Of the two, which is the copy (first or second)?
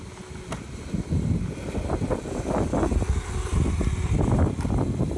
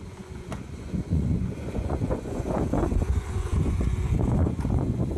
second